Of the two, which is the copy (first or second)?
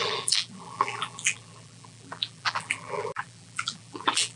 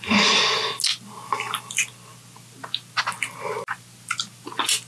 first